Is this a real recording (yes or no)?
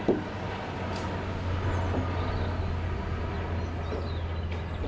yes